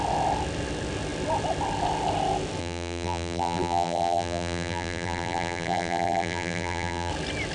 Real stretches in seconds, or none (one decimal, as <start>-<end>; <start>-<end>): 0.0-2.6; 7.1-7.5